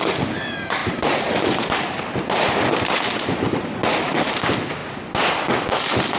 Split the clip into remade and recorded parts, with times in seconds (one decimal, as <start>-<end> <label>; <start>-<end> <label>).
0.0-3.8 remade; 3.8-4.3 recorded; 4.3-4.8 remade; 4.8-6.2 recorded